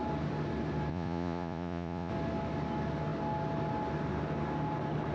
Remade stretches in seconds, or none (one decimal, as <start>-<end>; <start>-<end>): 0.9-2.1